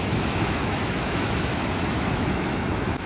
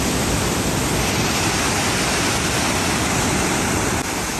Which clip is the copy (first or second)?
first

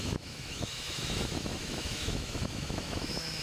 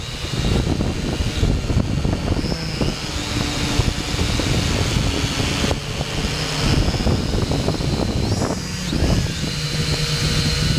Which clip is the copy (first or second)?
first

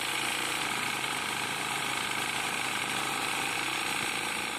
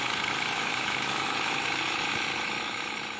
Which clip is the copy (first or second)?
second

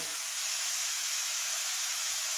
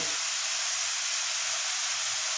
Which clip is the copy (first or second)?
first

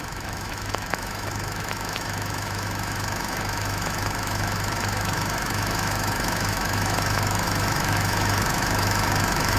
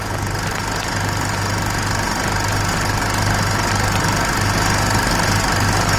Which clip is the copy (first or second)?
first